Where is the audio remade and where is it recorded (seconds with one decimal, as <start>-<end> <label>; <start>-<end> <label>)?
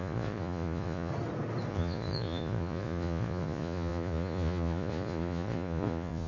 0.0-1.1 remade; 1.1-1.7 recorded; 1.7-6.3 remade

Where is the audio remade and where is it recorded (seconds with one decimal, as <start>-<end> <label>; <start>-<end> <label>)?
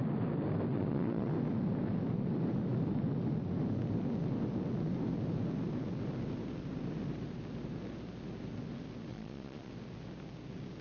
0.0-0.7 recorded; 0.7-1.3 remade; 1.3-9.1 recorded; 9.1-9.7 remade; 9.7-10.8 recorded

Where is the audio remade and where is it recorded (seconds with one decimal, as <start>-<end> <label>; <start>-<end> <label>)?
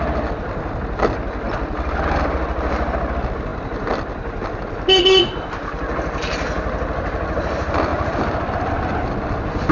0.0-9.7 recorded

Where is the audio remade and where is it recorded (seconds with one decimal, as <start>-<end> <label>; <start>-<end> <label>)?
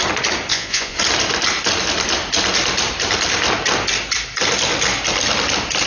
0.0-0.5 recorded; 0.5-1.0 remade; 1.0-5.9 recorded